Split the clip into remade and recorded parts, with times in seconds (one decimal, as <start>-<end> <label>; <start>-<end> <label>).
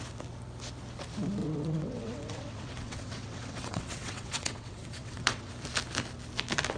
0.0-1.4 recorded; 1.4-5.5 remade; 5.5-6.8 recorded